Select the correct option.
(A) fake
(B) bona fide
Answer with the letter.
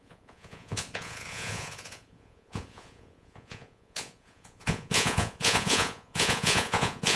A